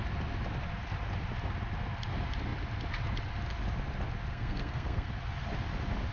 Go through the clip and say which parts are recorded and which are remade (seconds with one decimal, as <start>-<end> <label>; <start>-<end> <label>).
0.0-4.3 recorded; 4.3-5.1 remade; 5.1-6.1 recorded